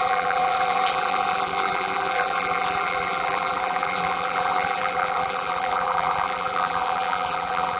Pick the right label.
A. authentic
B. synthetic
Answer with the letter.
B